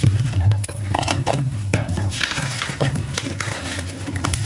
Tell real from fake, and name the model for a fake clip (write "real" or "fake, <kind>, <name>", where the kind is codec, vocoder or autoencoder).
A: fake, codec, SNAC